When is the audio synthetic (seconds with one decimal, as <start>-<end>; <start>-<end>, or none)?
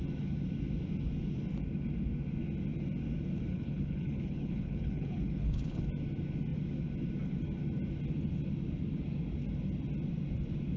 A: 3.5-5.9